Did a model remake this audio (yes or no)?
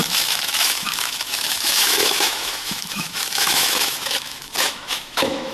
yes